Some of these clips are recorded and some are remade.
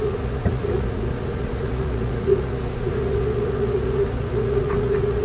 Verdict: remade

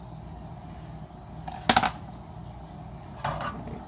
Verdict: recorded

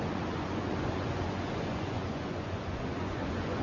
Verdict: remade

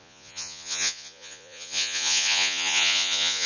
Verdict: remade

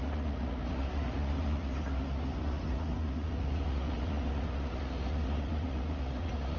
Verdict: remade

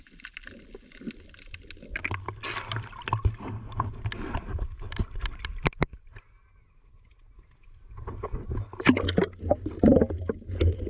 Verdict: recorded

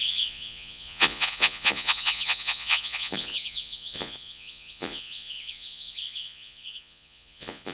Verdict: remade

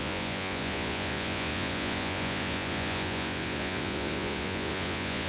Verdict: remade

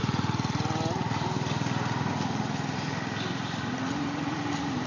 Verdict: recorded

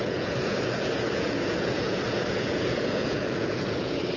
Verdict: remade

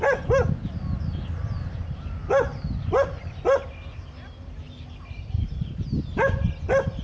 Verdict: recorded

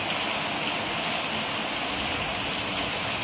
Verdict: recorded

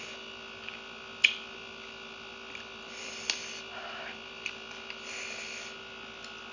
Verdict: recorded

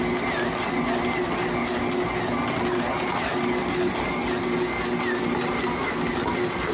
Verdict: recorded